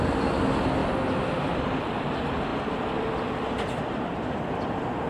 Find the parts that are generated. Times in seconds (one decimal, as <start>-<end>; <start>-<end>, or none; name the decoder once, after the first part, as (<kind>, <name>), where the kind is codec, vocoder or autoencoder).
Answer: none